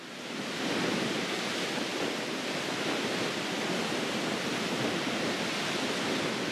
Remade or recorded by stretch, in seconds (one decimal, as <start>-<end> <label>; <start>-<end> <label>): 0.0-6.5 recorded